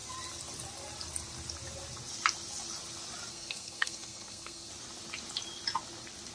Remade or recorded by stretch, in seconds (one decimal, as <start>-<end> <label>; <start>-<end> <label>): 0.0-3.3 recorded; 3.3-4.7 remade; 4.7-6.3 recorded